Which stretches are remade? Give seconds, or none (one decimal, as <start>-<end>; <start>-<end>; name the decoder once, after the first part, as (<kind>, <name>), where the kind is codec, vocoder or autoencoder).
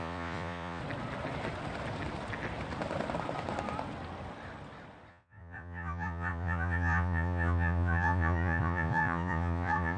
0.0-0.8 (vocoder, Vocos); 5.1-10.0